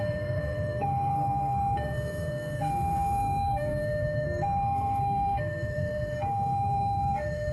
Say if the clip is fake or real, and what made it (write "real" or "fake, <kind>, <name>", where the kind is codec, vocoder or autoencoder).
fake, codec, SNAC